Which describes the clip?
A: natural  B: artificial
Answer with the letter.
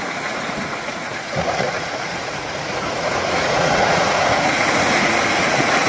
B